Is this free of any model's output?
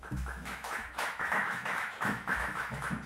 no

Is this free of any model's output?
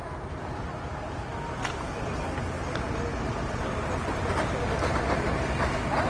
yes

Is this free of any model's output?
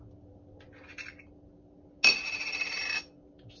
yes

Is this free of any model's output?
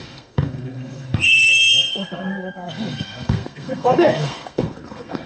no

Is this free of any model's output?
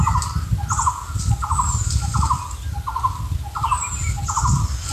yes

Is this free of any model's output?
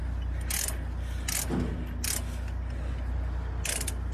yes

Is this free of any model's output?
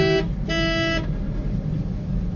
yes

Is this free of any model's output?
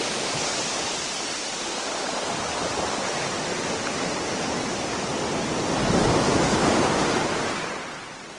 yes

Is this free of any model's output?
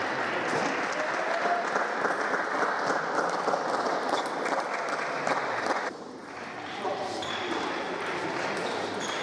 yes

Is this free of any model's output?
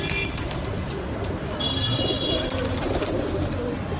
yes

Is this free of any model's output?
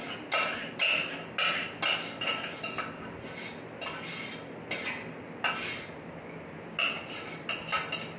yes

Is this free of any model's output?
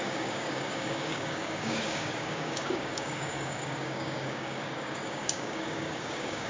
no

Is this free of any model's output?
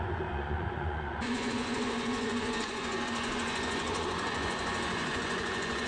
no